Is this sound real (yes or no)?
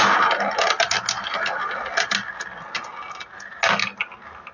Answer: yes